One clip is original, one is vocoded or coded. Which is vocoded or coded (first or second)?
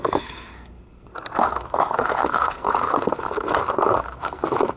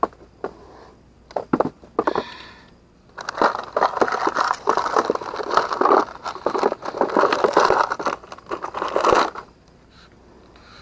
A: first